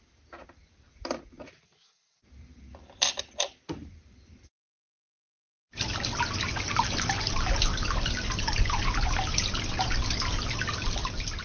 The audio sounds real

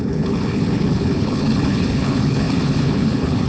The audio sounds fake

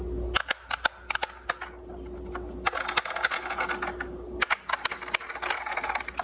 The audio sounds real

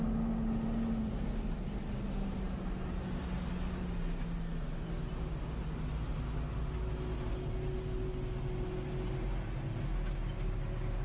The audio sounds real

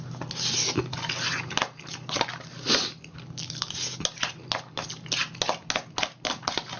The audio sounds real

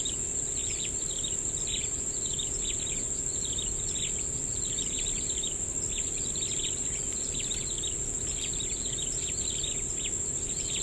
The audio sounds real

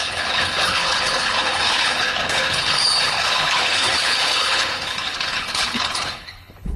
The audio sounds fake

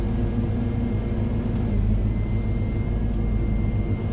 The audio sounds real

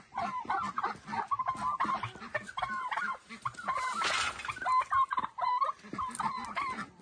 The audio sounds real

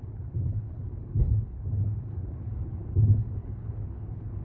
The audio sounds fake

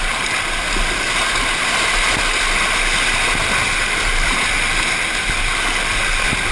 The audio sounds real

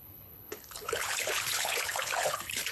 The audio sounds fake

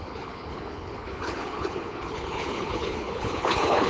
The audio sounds fake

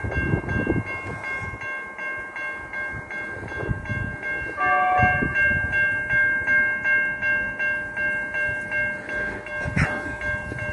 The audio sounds real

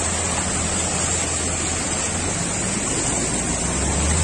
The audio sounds real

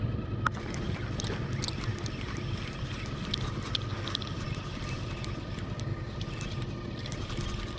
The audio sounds real